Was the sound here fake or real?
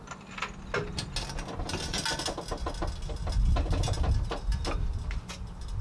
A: real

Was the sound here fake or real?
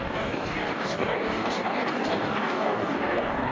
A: fake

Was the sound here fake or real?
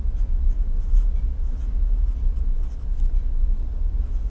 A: real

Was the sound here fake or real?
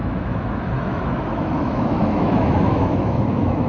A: fake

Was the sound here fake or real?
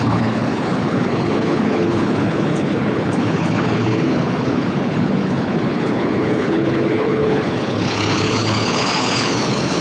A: fake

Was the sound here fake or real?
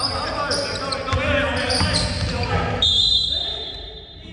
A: real